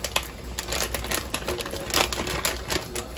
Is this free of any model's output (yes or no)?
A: yes